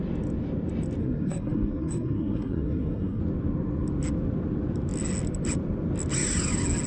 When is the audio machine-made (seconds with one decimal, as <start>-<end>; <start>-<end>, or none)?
1.0-3.2